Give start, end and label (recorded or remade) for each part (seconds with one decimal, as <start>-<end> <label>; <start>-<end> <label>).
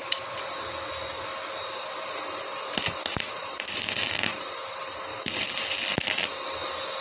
0.0-1.3 recorded; 1.3-2.8 remade; 2.8-3.4 recorded; 3.4-4.6 remade; 4.6-7.0 recorded